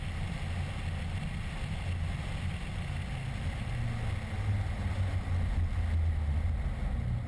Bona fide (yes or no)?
yes